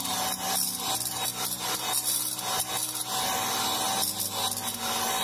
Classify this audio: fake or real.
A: real